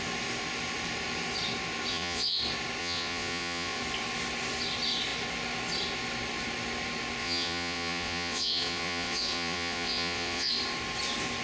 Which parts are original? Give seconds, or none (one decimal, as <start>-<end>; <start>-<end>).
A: 0.0-1.9; 2.4-2.8; 3.8-7.2; 10.5-11.4